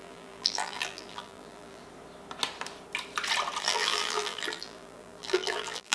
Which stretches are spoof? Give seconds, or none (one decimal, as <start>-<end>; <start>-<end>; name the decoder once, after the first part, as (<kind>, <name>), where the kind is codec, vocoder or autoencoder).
0.0-1.8 (vocoder, BigVGAN v2); 3.6-5.9